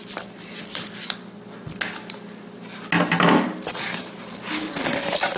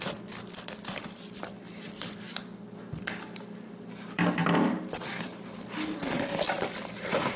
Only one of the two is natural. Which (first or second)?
first